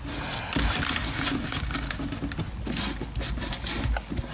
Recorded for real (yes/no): yes